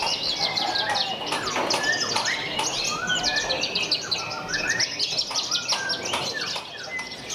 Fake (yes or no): no